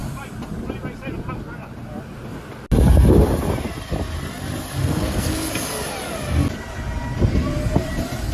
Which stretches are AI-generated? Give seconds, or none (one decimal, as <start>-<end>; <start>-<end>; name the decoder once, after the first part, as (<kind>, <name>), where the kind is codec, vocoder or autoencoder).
4.8-5.5 (codec, SNAC)